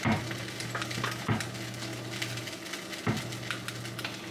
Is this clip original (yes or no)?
yes